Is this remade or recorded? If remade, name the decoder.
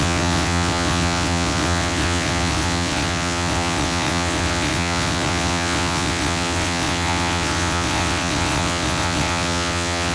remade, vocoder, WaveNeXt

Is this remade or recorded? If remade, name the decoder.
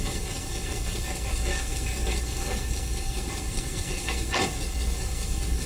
remade, codec, SNAC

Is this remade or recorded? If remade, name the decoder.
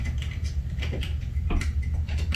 recorded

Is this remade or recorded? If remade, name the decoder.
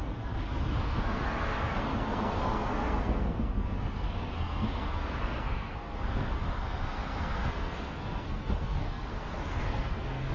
remade, codec, SNAC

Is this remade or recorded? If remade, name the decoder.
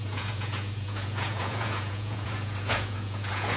remade, vocoder, Vocos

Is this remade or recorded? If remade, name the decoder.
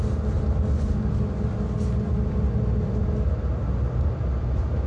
recorded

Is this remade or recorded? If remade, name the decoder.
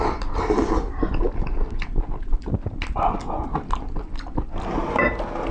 recorded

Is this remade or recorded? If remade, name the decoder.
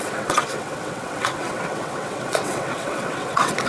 remade, vocoder, WaveNeXt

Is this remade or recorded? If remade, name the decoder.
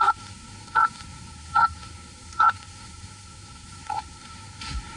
remade, codec, SNAC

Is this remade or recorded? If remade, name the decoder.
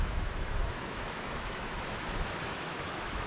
remade, autoencoder, DAC-VAE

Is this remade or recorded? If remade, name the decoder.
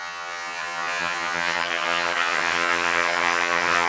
remade, vocoder, HiFi-GAN